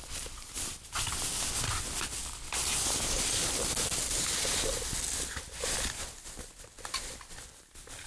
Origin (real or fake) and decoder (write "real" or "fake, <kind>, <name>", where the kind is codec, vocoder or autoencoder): real